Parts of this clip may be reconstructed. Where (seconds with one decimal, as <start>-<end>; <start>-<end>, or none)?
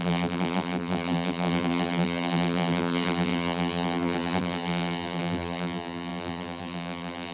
0.0-7.3